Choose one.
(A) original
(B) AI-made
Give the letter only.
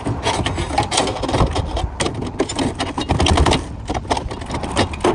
A